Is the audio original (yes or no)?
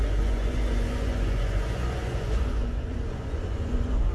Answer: no